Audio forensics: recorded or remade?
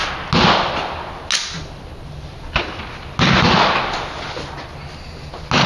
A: recorded